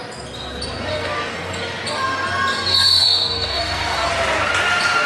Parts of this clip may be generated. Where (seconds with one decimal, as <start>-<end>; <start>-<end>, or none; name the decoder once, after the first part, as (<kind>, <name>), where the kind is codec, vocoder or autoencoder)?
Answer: 0.9-1.6 (codec, SNAC); 2.7-4.1